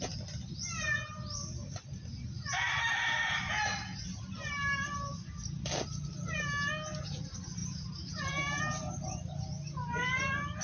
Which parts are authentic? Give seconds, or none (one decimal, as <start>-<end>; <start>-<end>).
0.0-7.6; 8.6-10.6